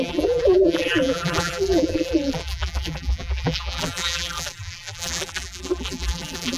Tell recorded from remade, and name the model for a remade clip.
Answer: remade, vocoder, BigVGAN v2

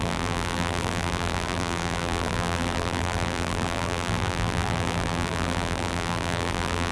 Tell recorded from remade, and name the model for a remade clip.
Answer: remade, vocoder, BigVGAN v2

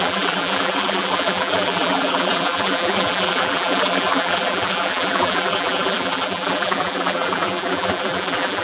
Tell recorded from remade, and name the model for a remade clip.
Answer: remade, vocoder, BigVGAN v2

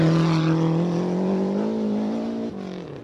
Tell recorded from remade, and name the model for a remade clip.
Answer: recorded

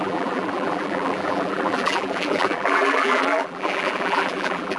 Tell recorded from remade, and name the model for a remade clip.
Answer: remade, vocoder, BigVGAN v2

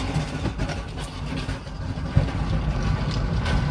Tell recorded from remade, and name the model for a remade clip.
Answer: recorded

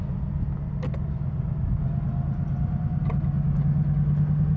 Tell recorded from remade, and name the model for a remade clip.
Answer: recorded